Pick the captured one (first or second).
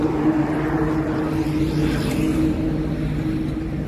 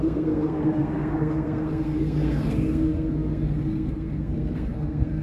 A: first